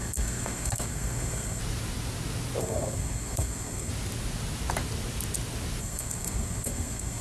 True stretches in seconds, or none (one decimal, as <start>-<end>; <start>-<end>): 1.6-2.6; 3.9-5.8